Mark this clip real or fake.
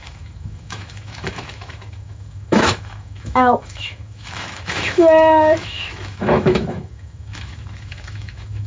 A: fake